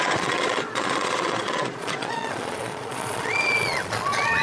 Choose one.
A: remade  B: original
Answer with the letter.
A